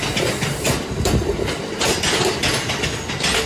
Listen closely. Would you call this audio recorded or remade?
recorded